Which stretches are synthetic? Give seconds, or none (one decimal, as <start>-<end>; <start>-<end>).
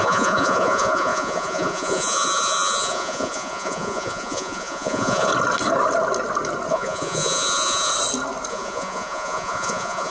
0.0-5.3; 6.7-7.9; 8.5-10.1